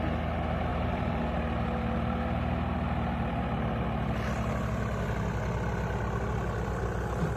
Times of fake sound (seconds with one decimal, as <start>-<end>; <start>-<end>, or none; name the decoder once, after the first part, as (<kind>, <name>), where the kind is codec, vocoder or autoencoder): 0.7-1.2 (vocoder, BigVGAN v2)